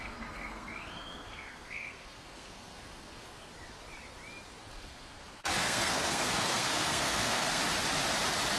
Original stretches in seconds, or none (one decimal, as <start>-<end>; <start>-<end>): 3.5-4.7; 7.6-8.6